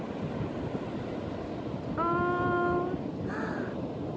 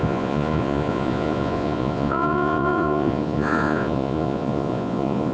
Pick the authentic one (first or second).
first